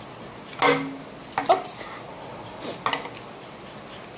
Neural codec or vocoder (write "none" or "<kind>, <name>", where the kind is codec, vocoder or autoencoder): none